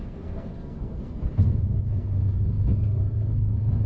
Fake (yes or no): yes